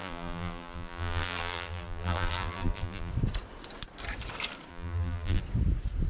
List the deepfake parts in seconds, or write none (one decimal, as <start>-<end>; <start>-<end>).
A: 0.0-3.1; 4.7-5.4